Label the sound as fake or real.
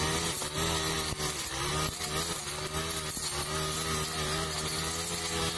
real